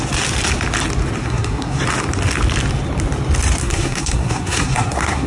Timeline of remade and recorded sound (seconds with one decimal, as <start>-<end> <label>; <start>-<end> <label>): 0.0-1.2 recorded; 1.2-1.8 remade; 1.8-3.6 recorded; 3.6-5.3 remade